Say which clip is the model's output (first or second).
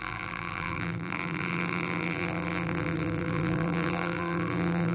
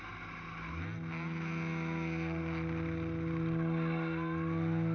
first